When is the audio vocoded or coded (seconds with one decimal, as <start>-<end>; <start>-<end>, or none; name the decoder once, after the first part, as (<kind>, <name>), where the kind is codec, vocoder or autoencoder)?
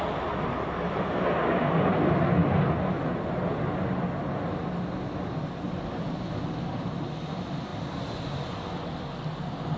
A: none